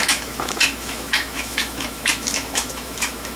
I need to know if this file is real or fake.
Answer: fake